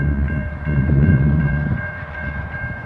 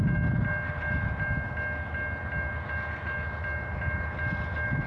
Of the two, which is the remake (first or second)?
first